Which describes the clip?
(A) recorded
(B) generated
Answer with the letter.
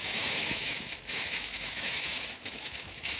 B